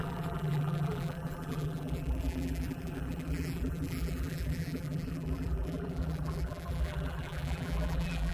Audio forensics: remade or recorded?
remade